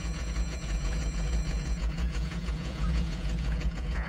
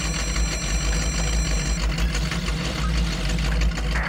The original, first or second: second